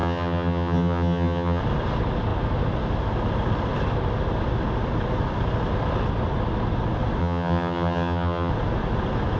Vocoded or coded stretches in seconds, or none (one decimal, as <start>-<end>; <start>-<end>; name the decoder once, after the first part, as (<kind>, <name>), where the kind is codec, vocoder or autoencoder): 0.0-1.6 (vocoder, HiFi-GAN); 7.2-8.5